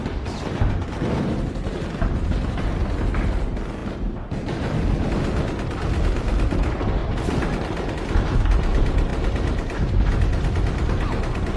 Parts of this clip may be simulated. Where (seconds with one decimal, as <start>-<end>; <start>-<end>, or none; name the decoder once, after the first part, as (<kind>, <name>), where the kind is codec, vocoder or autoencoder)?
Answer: 0.0-1.4 (vocoder, BigVGAN v2); 7.0-7.9; 9.1-10.2